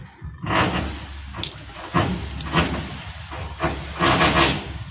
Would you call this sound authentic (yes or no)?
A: yes